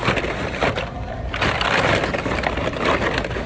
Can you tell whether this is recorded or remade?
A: recorded